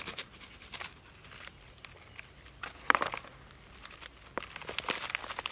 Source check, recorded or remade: recorded